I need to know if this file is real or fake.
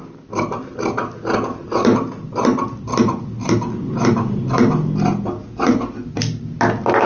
real